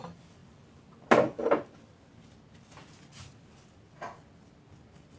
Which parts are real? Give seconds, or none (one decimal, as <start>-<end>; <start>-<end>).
0.0-5.2